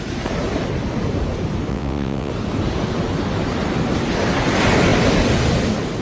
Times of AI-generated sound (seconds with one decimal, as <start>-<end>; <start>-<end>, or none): 1.7-2.3